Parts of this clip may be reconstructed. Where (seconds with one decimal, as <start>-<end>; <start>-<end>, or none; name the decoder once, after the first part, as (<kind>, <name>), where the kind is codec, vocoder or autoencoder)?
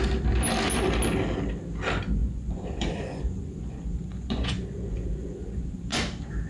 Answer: 2.2-6.0 (vocoder, Vocos)